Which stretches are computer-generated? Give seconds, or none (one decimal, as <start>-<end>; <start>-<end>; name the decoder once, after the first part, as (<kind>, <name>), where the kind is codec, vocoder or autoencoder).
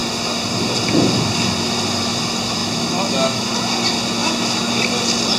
2.6-3.5 (autoencoder, DAC-VAE); 4.2-4.7